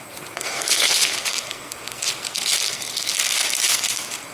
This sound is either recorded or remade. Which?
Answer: remade